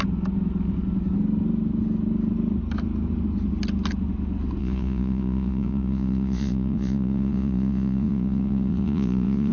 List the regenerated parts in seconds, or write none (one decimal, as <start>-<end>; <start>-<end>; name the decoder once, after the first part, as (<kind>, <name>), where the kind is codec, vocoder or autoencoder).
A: 4.6-9.5 (vocoder, Vocos)